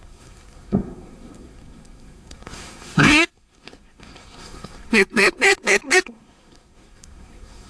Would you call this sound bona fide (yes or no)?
no